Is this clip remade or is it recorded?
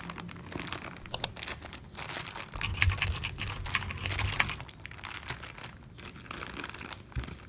recorded